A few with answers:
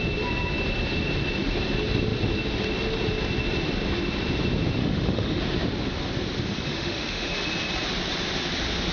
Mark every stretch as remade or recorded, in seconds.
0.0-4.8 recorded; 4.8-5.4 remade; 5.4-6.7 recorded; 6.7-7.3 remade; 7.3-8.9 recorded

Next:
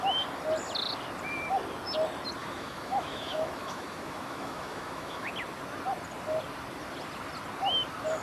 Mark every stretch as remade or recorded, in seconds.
0.0-2.4 recorded; 2.4-5.3 remade; 5.3-8.2 recorded

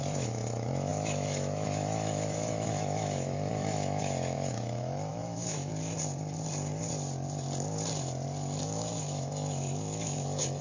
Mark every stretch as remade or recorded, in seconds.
0.0-5.7 remade; 5.7-8.6 recorded; 8.6-10.6 remade

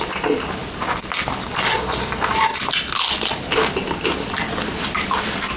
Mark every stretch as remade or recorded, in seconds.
0.0-5.6 recorded

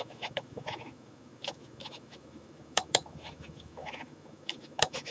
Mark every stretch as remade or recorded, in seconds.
0.0-5.1 remade

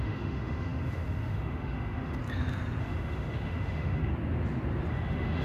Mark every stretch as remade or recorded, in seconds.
0.0-2.2 remade; 2.2-2.8 recorded; 2.8-4.1 remade; 4.1-4.9 recorded; 4.9-5.4 remade

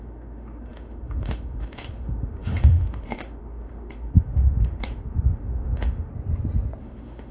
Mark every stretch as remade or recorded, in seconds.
0.0-6.1 remade; 6.1-6.8 recorded; 6.8-7.3 remade

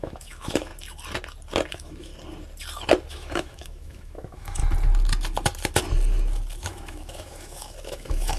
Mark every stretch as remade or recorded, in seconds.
0.0-0.7 remade; 0.7-1.7 recorded; 1.7-2.1 remade; 2.1-3.1 recorded; 3.1-4.6 remade; 4.6-6.6 recorded; 6.6-8.4 remade